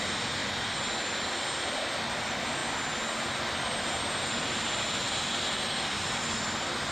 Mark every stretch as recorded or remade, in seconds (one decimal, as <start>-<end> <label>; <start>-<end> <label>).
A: 0.0-6.9 recorded